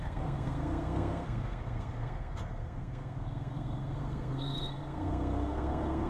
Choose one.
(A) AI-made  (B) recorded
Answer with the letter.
A